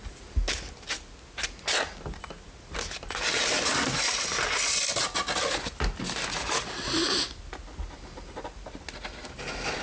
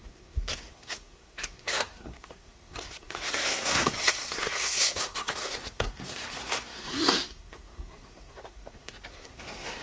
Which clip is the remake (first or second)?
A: second